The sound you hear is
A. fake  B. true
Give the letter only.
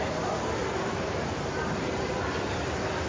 B